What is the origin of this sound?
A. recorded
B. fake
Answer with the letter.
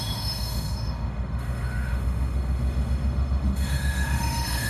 B